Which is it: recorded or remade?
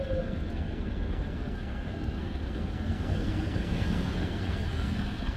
remade